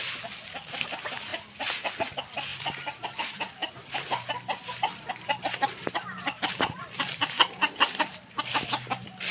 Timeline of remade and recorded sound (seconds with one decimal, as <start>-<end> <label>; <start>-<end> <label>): 0.0-1.3 recorded; 1.3-1.9 remade; 1.9-2.5 recorded; 2.5-3.1 remade; 3.1-3.6 recorded; 3.6-8.4 remade; 8.4-9.3 recorded

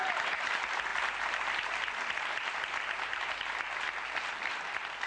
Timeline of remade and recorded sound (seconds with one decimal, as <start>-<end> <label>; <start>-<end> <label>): 0.0-5.1 recorded

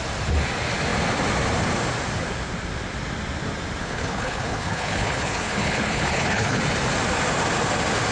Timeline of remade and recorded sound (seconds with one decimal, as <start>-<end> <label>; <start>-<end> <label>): 0.0-3.8 recorded; 3.8-6.6 remade; 6.6-8.1 recorded

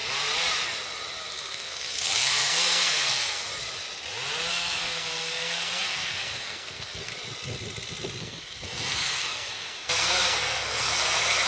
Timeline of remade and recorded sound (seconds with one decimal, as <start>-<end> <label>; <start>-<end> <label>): 0.0-1.3 recorded; 1.3-3.5 remade; 3.5-4.5 recorded; 4.5-7.1 remade; 7.1-8.2 recorded; 8.2-11.5 remade

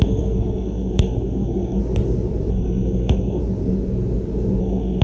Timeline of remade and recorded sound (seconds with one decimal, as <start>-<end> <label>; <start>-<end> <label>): 0.0-1.8 remade; 1.8-2.5 recorded; 2.5-3.4 remade; 3.4-4.6 recorded; 4.6-5.0 remade

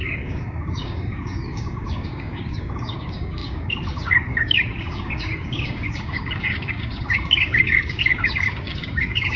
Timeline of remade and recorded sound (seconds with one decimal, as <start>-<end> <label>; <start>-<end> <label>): 0.0-9.4 remade

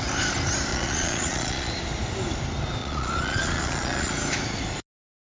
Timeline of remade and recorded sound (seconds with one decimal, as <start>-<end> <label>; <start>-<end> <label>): 0.0-0.7 recorded; 0.7-1.7 remade; 1.7-2.8 recorded; 2.8-4.1 remade; 4.1-5.2 recorded